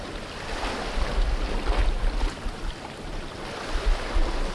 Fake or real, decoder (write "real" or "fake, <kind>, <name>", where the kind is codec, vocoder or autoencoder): real